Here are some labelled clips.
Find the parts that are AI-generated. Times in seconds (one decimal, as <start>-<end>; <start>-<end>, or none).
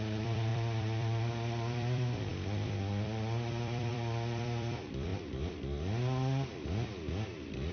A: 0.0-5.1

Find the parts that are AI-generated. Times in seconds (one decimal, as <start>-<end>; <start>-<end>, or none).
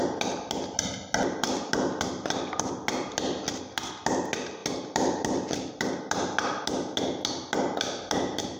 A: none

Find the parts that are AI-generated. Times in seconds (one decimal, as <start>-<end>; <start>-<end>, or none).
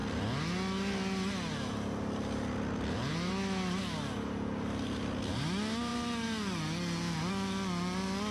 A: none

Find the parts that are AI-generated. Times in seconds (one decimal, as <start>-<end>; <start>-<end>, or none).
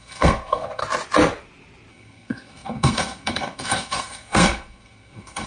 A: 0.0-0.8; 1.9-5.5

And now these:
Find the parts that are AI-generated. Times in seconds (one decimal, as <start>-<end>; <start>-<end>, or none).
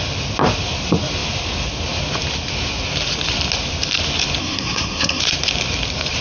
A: 4.4-5.2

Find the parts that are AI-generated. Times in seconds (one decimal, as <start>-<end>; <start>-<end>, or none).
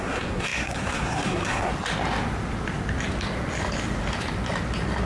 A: 0.0-1.7